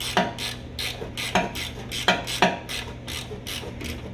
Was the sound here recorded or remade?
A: recorded